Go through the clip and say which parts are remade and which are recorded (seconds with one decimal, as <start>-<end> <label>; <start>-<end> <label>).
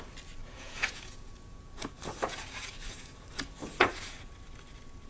0.0-0.4 recorded; 0.4-3.2 remade; 3.2-3.6 recorded; 3.6-4.3 remade; 4.3-5.1 recorded